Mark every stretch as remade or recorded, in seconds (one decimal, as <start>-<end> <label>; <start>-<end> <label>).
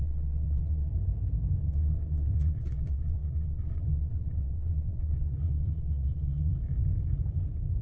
0.0-0.9 remade; 0.9-1.6 recorded; 1.6-6.5 remade; 6.5-7.8 recorded